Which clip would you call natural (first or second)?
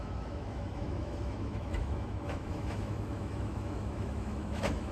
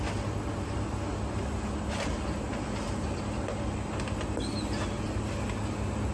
second